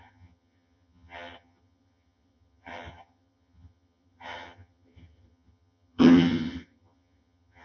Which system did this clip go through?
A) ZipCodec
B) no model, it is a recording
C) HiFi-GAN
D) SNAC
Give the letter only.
C